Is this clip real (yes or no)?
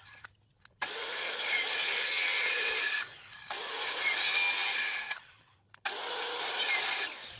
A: yes